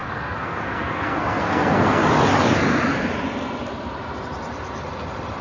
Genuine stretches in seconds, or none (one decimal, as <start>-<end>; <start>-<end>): 2.0-5.4